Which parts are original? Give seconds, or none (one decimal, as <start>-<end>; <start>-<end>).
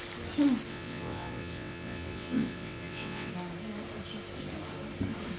0.0-0.7; 3.3-5.4